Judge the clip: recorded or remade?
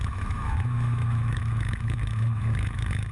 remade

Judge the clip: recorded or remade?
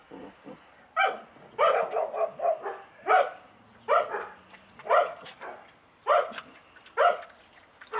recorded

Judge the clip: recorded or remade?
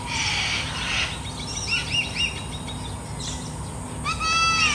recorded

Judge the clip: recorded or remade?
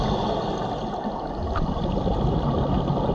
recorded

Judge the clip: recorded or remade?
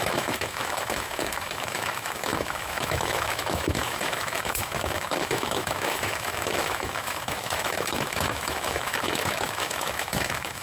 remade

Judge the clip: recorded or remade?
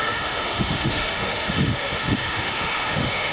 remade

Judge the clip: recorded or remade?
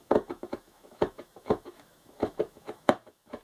remade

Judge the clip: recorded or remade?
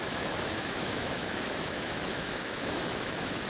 remade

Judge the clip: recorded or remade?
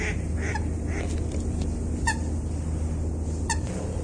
recorded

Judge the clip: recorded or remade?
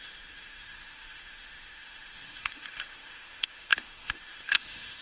remade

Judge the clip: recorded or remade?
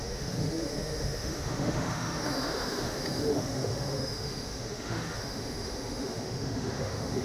remade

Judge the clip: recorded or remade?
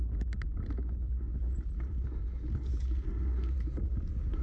recorded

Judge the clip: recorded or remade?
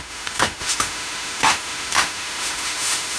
remade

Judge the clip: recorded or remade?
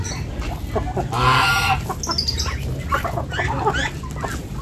recorded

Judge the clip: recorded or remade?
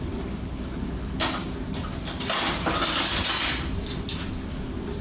recorded